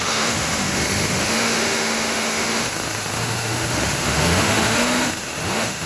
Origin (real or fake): fake